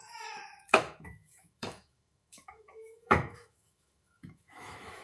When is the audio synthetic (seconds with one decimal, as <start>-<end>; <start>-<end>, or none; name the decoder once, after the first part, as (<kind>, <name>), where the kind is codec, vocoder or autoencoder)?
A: 0.0-5.0 (autoencoder, DAC-VAE)